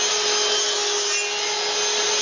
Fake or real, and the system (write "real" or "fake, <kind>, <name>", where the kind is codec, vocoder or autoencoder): real